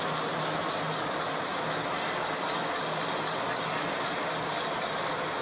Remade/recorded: recorded